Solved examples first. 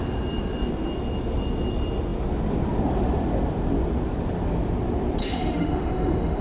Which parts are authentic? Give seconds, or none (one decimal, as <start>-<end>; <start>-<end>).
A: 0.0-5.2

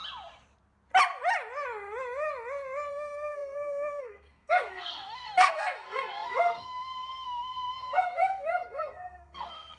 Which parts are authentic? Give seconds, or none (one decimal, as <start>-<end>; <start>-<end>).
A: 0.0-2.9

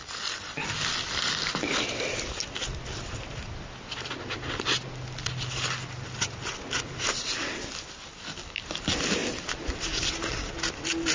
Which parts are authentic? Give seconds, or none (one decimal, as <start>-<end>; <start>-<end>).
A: 0.0-11.1

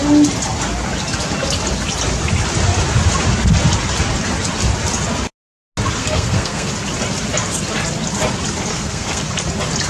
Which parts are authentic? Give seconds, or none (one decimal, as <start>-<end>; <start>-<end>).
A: 0.0-6.0; 6.7-8.7; 9.2-9.9